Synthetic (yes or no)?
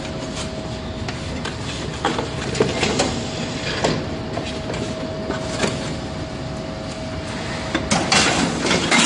no